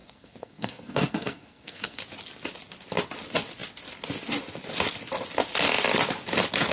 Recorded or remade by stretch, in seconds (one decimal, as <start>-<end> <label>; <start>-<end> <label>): 0.0-2.0 remade; 2.0-6.7 recorded